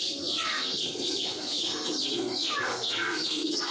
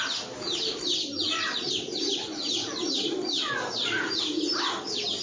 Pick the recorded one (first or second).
second